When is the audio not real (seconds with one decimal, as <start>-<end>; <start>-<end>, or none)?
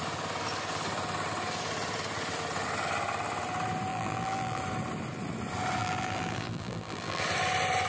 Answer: 3.9-4.6; 5.8-7.2